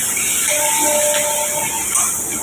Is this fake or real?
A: real